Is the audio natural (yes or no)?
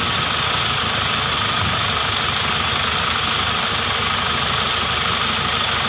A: yes